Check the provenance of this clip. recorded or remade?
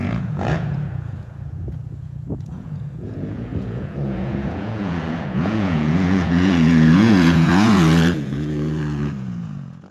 remade